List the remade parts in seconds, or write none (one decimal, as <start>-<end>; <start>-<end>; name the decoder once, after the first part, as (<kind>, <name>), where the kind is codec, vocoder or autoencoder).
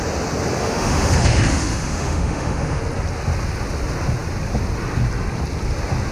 0.6-2.8 (autoencoder, DAC-VAE)